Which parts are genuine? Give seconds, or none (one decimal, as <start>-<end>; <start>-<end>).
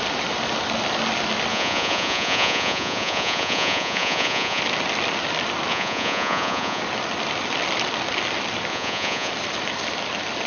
0.0-1.5; 4.6-5.7; 6.8-8.7; 9.3-10.5